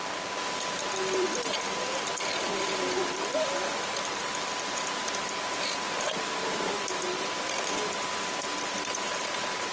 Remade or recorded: remade